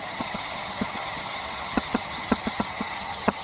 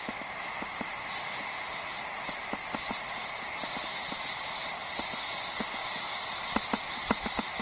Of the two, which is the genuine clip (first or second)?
second